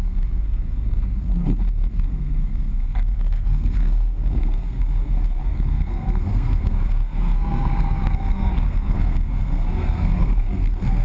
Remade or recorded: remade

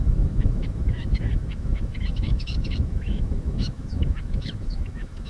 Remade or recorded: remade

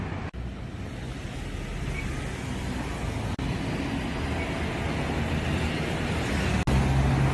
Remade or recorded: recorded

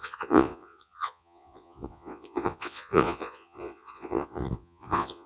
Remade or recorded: remade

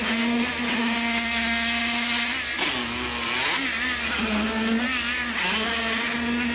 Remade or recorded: recorded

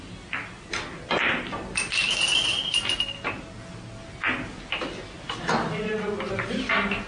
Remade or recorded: recorded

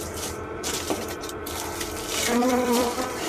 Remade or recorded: remade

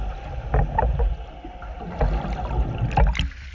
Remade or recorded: recorded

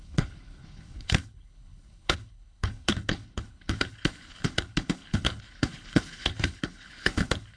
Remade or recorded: remade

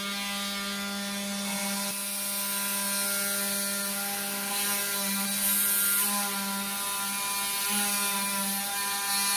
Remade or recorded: recorded